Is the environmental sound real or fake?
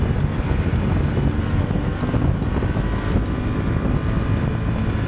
real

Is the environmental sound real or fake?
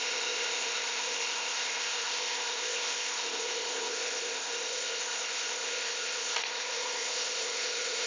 fake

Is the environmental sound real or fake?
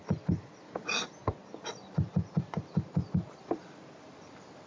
real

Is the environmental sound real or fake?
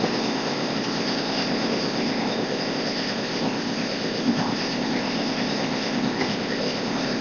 fake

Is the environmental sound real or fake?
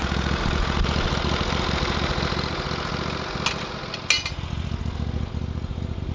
real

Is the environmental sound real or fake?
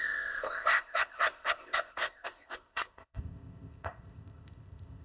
fake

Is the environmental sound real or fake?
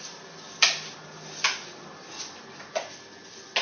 real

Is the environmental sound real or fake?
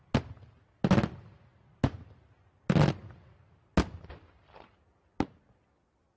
real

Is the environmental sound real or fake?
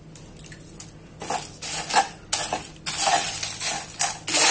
real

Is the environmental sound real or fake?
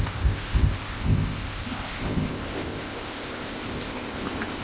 fake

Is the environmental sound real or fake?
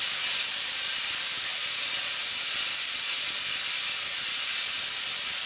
real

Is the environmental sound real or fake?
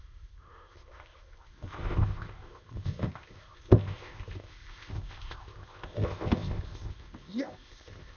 fake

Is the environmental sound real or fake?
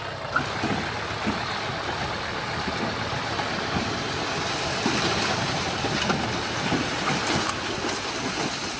real